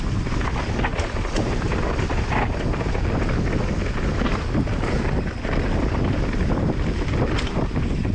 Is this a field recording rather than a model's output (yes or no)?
yes